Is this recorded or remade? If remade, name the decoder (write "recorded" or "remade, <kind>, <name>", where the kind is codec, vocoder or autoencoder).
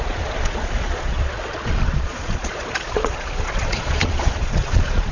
remade, vocoder, Vocos